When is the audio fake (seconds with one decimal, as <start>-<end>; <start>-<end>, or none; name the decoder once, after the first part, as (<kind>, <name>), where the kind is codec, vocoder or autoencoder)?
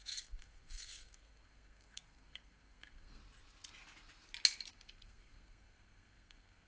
0.0-3.2 (codec, SNAC); 4.7-6.7